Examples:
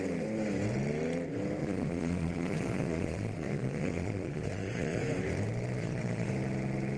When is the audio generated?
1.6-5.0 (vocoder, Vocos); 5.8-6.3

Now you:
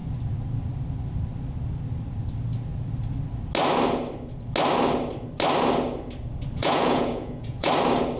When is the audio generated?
6.6-7.7 (vocoder, Vocos)

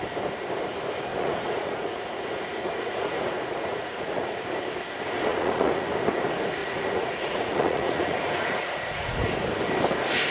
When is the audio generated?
1.1-4.4 (vocoder, Vocos); 5.3-5.9; 6.6-9.3

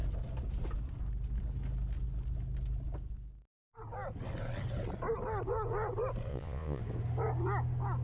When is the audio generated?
6.3-6.8 (vocoder, Vocos)

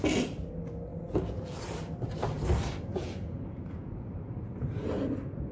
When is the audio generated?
0.9-1.6 (vocoder, Vocos); 2.9-4.1

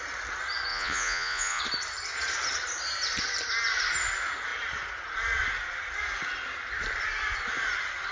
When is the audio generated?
0.7-1.6 (vocoder, Vocos)